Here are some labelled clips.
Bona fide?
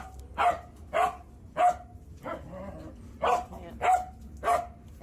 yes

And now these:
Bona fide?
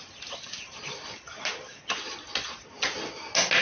yes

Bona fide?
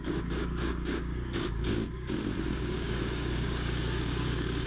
no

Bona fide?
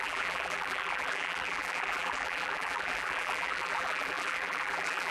no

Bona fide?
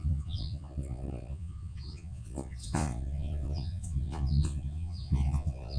no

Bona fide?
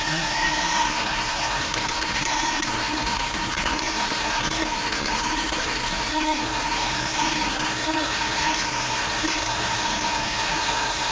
no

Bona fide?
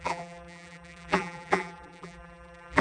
no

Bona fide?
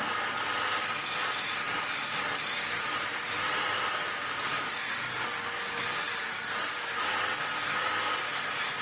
yes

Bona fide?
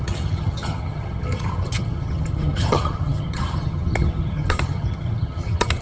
no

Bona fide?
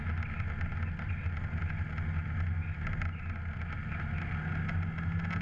yes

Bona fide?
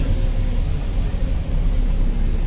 yes